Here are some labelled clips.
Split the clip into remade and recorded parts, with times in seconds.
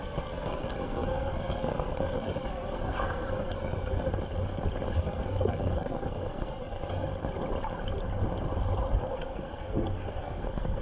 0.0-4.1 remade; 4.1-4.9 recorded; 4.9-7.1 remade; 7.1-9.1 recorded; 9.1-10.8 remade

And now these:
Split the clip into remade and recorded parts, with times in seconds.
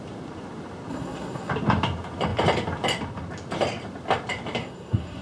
0.0-0.9 recorded; 0.9-1.5 remade; 1.5-4.6 recorded; 4.6-5.2 remade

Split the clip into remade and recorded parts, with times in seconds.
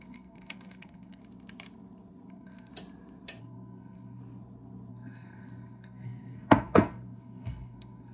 0.0-1.2 remade; 1.2-2.3 recorded; 2.3-2.7 remade; 2.7-3.4 recorded; 3.4-4.2 remade; 4.2-4.9 recorded; 4.9-8.1 remade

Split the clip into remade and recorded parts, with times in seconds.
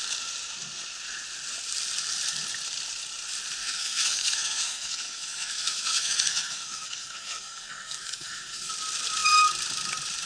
0.0-3.6 recorded; 3.6-8.7 remade; 8.7-10.3 recorded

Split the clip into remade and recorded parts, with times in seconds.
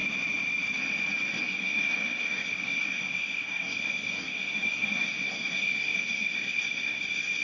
0.0-1.4 recorded; 1.4-7.4 remade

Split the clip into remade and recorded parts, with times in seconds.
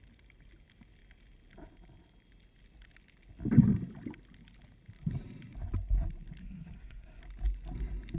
0.0-6.4 recorded; 6.4-7.2 remade; 7.2-8.2 recorded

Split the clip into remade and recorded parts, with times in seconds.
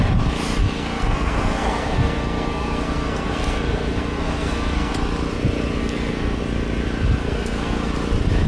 0.0-0.6 recorded; 0.6-4.9 remade; 4.9-5.8 recorded; 5.8-6.4 remade; 6.4-7.2 recorded; 7.2-7.9 remade; 7.9-8.5 recorded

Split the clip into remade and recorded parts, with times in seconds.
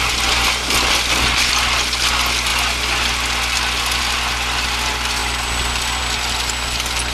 0.0-7.1 recorded